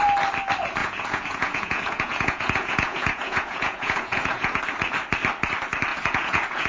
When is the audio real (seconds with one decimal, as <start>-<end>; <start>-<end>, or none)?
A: 0.0-0.8; 4.6-5.9

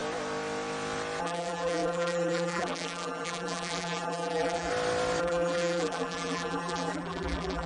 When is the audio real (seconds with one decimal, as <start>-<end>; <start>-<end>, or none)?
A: 0.0-1.2; 4.7-5.2

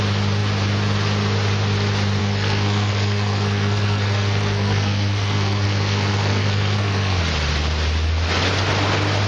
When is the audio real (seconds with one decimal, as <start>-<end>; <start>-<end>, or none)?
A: 0.0-2.2; 7.2-9.3

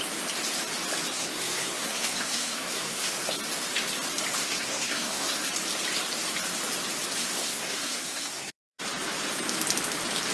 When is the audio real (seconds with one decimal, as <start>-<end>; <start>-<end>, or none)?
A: 0.0-1.1; 3.1-4.4; 5.5-7.2; 8.8-10.3

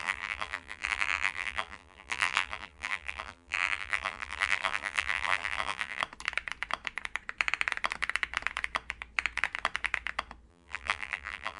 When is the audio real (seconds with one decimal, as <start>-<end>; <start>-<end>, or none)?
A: 6.0-10.5